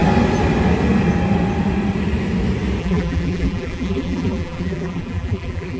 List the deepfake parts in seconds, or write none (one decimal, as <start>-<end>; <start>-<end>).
2.8-5.8